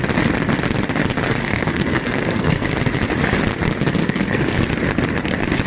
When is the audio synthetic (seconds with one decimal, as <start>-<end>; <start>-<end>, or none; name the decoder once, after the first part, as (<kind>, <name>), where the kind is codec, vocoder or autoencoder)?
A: 1.4-2.7 (codec, SNAC); 4.0-4.6